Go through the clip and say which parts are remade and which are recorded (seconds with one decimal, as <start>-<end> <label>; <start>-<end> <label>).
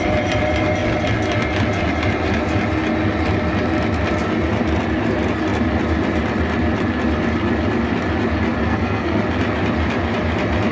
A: 0.0-8.6 recorded; 8.6-9.2 remade; 9.2-10.7 recorded